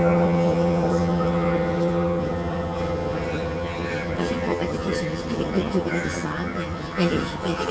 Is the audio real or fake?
fake